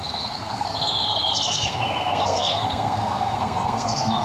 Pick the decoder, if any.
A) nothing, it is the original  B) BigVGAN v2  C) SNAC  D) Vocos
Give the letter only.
C